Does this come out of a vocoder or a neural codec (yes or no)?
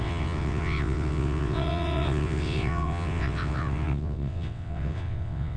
yes